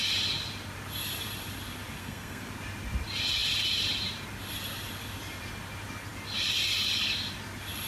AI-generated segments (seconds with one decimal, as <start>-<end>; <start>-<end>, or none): 2.0-2.5